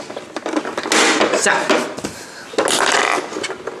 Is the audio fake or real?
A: real